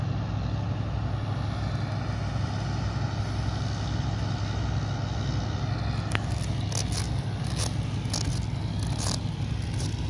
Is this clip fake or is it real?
real